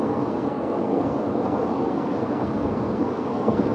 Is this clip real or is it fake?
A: fake